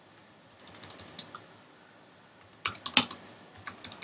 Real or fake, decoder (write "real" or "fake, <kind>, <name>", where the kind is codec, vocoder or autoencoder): real